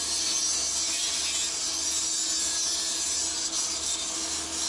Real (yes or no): yes